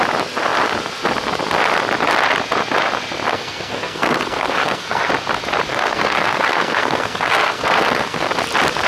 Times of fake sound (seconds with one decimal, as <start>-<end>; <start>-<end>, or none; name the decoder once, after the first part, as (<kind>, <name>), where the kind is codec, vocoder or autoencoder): 3.3-5.1 (codec, SNAC); 5.7-8.3